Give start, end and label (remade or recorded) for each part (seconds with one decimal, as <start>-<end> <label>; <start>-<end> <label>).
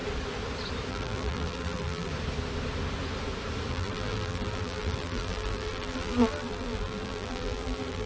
0.0-0.9 recorded; 0.9-2.1 remade; 2.1-3.7 recorded; 3.7-8.1 remade